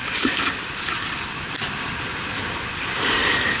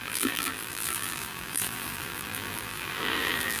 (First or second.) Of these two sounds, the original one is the first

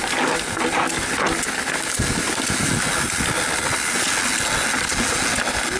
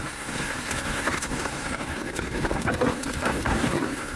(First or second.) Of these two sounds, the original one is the first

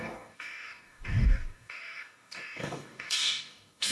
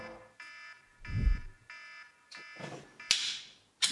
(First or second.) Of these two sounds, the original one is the second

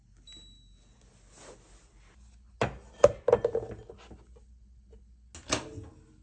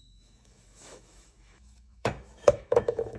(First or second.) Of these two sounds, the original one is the first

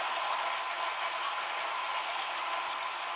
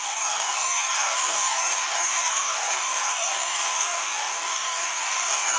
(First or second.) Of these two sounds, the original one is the first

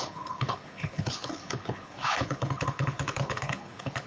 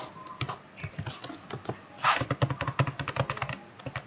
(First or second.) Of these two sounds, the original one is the second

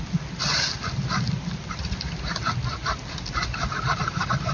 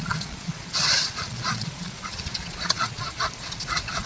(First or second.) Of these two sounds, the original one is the first